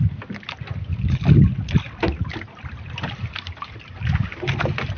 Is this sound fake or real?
real